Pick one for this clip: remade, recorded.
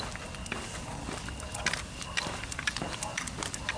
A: recorded